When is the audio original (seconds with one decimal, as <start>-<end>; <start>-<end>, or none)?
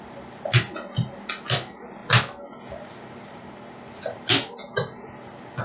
0.0-5.6